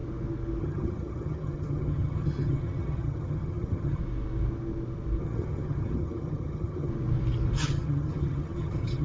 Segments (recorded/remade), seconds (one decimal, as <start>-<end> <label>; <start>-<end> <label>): 0.0-0.6 recorded; 0.6-4.0 remade; 4.0-5.2 recorded; 5.2-6.9 remade; 6.9-7.6 recorded; 7.6-9.0 remade